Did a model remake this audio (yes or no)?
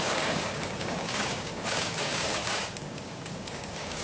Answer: yes